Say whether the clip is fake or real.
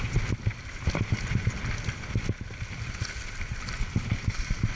real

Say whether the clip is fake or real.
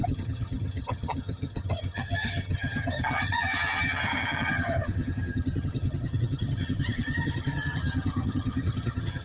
fake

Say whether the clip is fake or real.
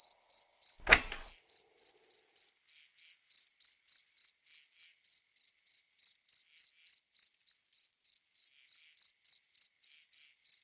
real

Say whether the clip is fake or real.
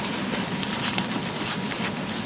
real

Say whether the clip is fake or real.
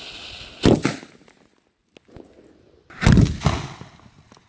real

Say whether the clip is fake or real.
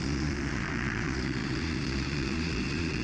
fake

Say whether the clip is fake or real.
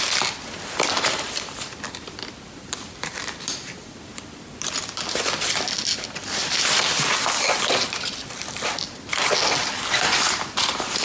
fake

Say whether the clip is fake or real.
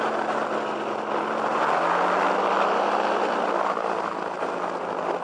real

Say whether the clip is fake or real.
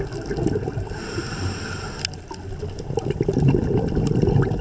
real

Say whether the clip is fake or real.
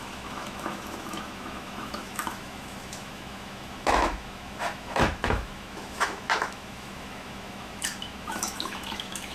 fake